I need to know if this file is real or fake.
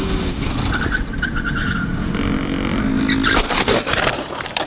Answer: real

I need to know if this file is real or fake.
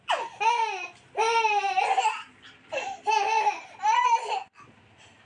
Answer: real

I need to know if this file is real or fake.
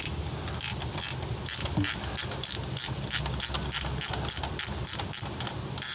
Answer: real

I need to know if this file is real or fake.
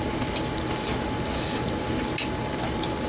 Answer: real